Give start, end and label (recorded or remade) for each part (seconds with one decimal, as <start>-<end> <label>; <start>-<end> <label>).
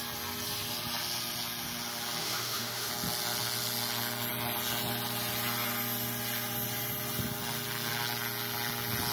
0.0-2.2 recorded; 2.2-2.9 remade; 2.9-9.1 recorded